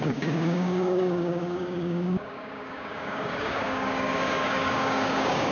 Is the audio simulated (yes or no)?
yes